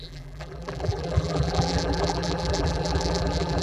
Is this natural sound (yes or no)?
no